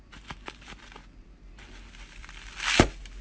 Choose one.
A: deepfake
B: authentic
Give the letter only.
B